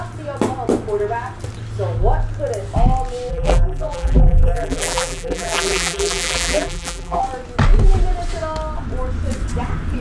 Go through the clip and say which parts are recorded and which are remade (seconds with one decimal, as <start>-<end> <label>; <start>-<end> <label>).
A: 0.0-3.3 recorded; 3.3-7.2 remade; 7.2-10.0 recorded